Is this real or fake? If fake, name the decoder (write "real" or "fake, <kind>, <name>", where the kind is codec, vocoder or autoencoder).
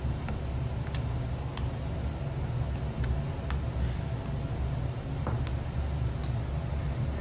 real